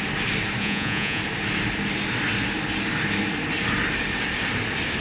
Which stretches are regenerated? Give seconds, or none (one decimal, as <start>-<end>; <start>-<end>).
0.6-1.2